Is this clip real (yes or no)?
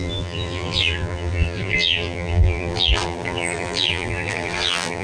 no